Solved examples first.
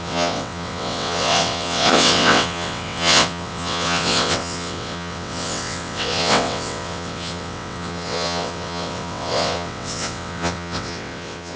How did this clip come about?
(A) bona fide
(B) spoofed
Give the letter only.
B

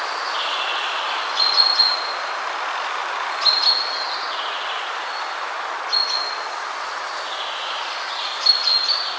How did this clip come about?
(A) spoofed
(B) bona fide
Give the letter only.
B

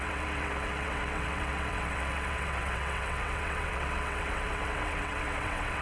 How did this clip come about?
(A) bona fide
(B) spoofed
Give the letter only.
B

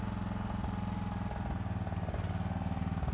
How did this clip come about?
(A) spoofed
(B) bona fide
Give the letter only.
B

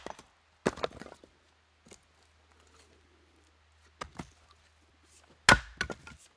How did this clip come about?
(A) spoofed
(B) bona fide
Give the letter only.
B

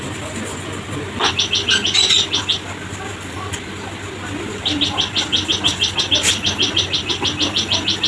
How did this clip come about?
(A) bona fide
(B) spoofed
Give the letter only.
A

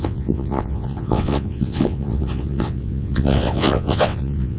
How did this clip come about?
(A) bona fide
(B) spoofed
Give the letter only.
B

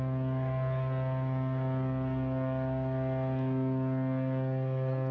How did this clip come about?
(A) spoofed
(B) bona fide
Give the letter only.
B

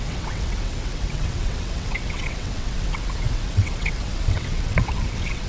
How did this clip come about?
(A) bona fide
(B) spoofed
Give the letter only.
B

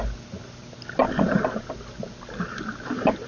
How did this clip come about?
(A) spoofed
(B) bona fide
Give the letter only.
B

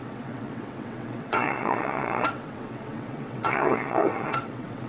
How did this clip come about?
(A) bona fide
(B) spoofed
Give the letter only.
B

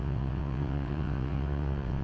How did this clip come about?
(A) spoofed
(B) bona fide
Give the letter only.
A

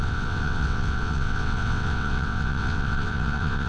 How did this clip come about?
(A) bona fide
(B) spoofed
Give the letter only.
B